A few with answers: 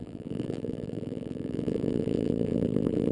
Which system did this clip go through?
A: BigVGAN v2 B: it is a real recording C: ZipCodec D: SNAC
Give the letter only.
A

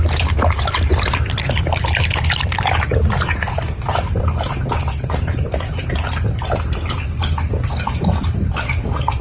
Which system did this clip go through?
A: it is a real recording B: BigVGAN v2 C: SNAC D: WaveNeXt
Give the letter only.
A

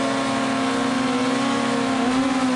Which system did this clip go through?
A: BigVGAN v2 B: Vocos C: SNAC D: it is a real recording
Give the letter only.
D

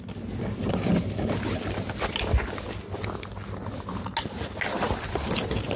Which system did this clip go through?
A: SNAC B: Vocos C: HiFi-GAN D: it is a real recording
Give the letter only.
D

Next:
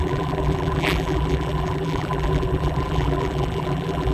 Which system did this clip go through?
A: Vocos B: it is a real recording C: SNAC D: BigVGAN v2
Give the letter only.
D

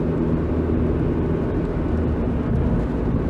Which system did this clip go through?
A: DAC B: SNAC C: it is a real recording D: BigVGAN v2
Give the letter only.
C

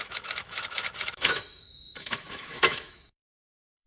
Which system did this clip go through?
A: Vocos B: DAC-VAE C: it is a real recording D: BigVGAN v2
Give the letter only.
B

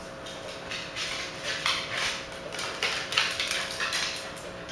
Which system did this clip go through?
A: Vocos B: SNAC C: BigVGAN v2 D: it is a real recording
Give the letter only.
D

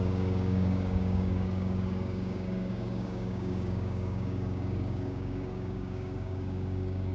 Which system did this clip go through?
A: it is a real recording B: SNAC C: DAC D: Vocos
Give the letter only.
C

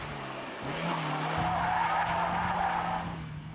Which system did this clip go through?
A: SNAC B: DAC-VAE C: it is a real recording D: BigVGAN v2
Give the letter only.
C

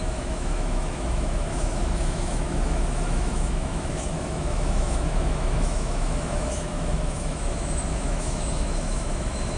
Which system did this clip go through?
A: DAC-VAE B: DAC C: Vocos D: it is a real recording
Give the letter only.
A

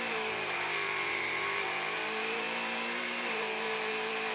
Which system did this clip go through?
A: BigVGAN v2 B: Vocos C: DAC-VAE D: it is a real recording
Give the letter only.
A